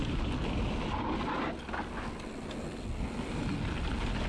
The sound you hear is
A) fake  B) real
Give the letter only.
B